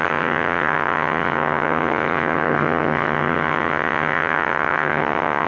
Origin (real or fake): fake